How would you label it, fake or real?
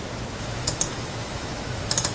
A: fake